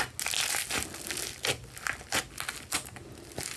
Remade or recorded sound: recorded